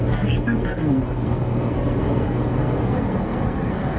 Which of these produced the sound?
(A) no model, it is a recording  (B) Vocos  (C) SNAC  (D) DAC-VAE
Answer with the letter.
C